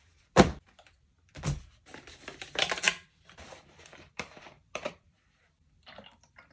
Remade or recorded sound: remade